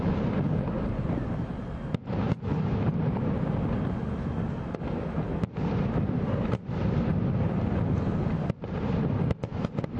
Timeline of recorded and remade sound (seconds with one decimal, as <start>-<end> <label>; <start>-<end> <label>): 0.0-2.5 remade; 2.5-5.6 recorded; 5.6-7.1 remade; 7.1-8.6 recorded; 8.6-10.0 remade